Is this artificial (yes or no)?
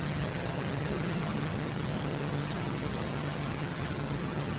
yes